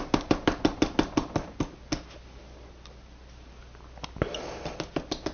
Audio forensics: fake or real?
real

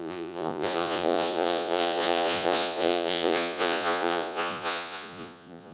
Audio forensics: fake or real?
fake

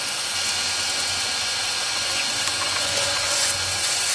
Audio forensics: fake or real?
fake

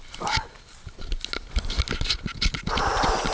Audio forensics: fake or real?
real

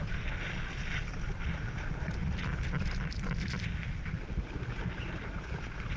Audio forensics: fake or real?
real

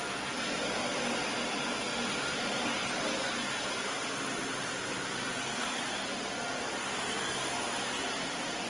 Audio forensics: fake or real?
real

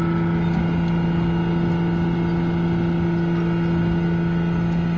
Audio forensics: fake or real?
real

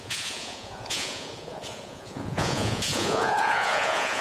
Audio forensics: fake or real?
fake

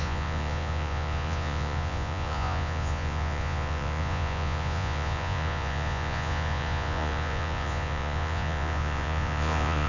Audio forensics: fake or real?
fake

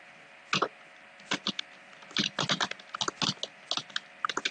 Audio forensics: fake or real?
real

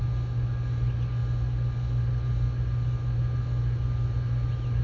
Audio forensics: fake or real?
real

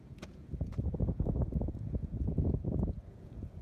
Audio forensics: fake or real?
fake